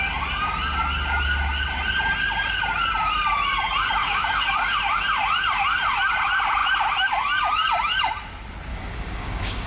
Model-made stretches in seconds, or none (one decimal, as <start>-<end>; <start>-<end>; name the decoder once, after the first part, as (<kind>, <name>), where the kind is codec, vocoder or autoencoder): 4.0-4.8 (codec, DAC); 8.7-9.7